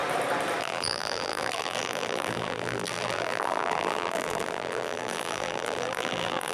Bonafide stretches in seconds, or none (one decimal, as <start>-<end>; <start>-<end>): 0.0-0.6